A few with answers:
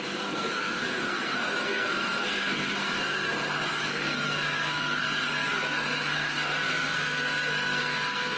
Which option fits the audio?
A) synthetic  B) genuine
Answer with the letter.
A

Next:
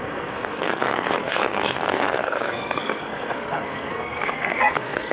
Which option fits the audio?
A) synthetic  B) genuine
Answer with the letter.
A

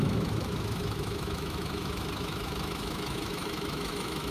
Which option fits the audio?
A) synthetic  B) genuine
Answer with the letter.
A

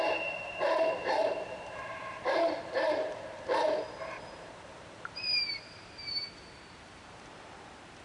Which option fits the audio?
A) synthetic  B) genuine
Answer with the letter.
A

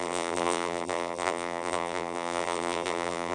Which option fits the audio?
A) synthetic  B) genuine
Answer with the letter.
A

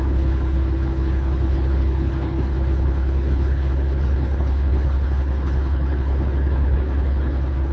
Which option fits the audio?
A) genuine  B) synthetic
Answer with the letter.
B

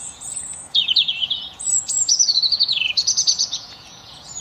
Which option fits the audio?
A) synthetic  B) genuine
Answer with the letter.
A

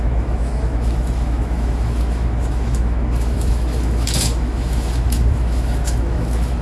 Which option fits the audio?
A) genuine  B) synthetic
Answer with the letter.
B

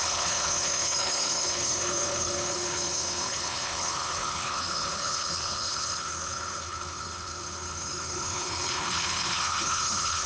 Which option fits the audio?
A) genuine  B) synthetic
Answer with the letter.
B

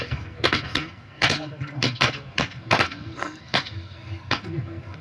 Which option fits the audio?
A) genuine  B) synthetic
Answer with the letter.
B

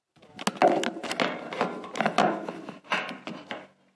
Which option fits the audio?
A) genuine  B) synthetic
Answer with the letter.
A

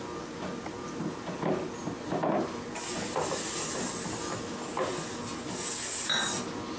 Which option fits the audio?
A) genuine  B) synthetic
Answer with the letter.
A